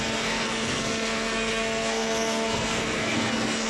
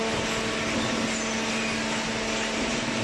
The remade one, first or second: first